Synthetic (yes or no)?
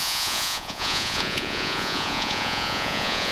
yes